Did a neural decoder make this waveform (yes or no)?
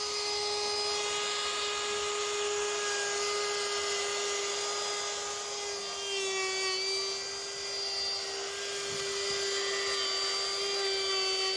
no